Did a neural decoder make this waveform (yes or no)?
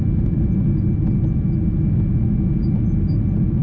no